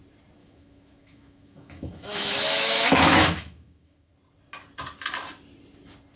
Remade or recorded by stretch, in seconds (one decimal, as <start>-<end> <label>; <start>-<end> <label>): 0.0-0.4 recorded; 0.4-4.1 remade; 4.1-6.2 recorded